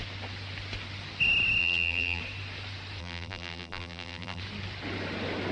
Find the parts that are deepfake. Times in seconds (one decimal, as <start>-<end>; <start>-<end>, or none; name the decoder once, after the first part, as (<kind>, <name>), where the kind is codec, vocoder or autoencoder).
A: 1.6-2.2 (vocoder, BigVGAN v2); 3.0-4.4